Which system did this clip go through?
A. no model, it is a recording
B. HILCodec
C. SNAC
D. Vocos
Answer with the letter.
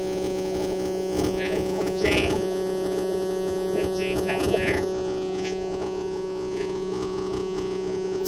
D